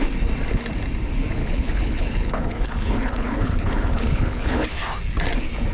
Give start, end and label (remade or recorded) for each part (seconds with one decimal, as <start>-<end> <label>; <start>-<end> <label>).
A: 0.0-1.4 recorded; 1.4-4.8 remade; 4.8-5.7 recorded